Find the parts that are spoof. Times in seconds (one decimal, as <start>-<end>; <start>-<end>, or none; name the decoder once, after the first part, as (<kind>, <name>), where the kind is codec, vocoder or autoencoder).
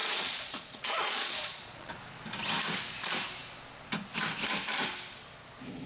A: 0.0-1.9 (vocoder, Vocos)